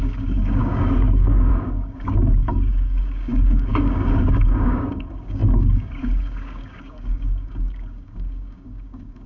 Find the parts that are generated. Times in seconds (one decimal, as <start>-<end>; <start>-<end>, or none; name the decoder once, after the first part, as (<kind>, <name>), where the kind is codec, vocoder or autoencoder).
0.0-9.3 (codec, DAC)